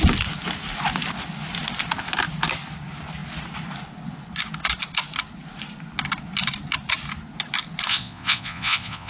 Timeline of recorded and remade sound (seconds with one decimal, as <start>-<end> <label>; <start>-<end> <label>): 0.0-7.9 recorded; 7.9-9.1 remade